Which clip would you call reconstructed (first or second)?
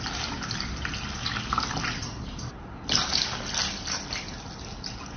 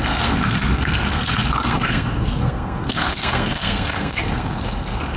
second